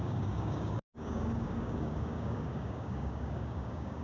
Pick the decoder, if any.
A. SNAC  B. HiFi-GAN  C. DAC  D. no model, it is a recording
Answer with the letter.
C